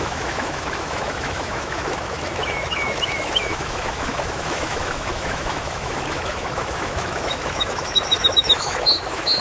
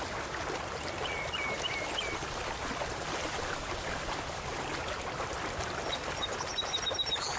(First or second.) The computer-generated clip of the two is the first